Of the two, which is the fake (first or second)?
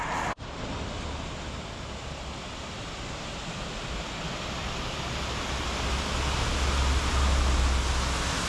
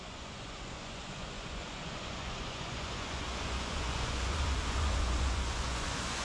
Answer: second